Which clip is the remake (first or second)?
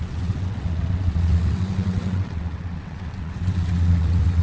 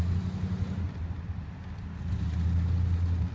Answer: first